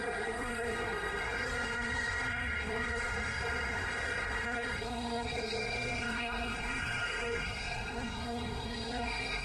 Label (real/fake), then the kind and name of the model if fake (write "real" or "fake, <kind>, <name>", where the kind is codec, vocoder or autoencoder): fake, codec, SNAC